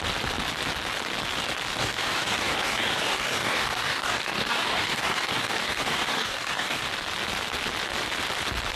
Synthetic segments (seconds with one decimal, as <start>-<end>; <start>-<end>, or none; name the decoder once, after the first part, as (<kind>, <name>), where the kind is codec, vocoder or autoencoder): 1.8-6.8 (codec, DAC)

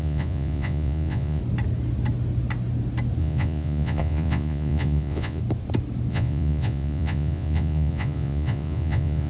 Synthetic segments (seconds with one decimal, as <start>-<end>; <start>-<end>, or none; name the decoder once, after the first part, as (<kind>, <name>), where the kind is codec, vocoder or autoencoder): 0.0-1.4 (vocoder, Vocos); 3.2-5.4; 6.1-9.3

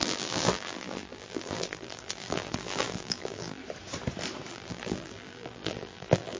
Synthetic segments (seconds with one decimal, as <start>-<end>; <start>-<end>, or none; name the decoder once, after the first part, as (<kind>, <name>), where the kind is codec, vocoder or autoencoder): 0.0-3.6 (vocoder, BigVGAN v2); 4.5-6.4

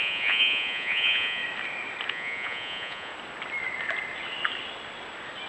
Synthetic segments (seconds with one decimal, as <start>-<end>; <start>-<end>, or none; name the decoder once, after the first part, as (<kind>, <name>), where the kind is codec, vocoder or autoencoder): 0.0-1.4 (vocoder, Vocos); 2.1-3.1

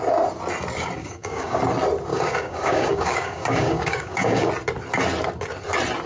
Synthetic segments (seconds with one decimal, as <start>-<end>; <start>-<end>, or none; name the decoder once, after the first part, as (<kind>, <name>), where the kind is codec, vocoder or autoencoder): 1.0-1.6 (codec, DAC); 2.1-4.5

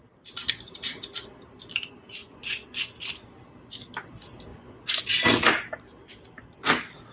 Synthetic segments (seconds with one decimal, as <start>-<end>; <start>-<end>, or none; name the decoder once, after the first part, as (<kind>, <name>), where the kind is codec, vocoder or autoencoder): 2.2-2.8 (vocoder, Vocos); 4.5-5.0

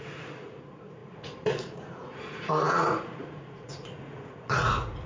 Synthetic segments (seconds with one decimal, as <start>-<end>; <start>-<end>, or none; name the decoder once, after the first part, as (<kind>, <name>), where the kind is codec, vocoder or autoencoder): 0.0-5.1 (vocoder, Vocos)